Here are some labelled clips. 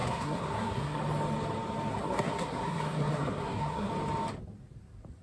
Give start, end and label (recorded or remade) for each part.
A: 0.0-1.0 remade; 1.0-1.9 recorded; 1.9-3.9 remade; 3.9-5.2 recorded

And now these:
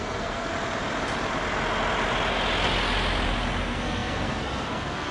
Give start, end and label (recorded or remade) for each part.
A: 0.0-0.5 remade; 0.5-3.6 recorded; 3.6-5.1 remade

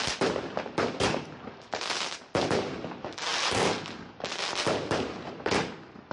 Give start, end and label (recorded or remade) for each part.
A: 0.0-6.1 recorded

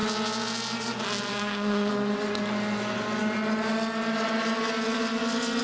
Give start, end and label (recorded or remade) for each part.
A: 0.0-1.3 recorded; 1.3-1.9 remade; 1.9-5.6 recorded

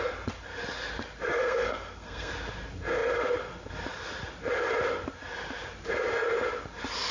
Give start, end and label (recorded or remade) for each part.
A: 0.0-1.4 recorded; 1.4-2.3 remade; 2.3-7.1 recorded

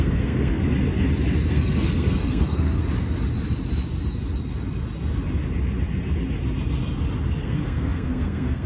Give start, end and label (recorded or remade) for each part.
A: 0.0-0.6 remade; 0.6-1.5 recorded; 1.5-2.8 remade; 2.8-7.4 recorded; 7.4-8.7 remade

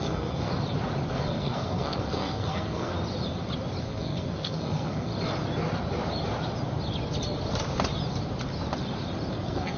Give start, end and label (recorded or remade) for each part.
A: 0.0-0.5 remade; 0.5-1.1 recorded; 1.1-2.9 remade; 2.9-3.8 recorded; 3.8-5.1 remade; 5.1-9.3 recorded; 9.3-9.8 remade

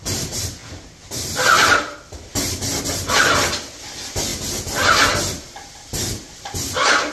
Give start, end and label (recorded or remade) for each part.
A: 0.0-7.1 recorded